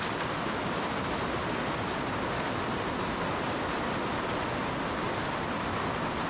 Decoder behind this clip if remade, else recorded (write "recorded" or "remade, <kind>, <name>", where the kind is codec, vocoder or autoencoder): recorded